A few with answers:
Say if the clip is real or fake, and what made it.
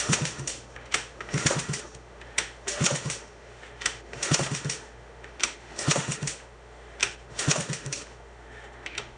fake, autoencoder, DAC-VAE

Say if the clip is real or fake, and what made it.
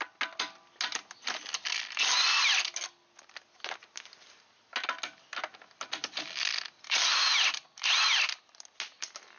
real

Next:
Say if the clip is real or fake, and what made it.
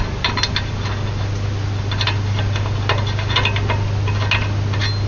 real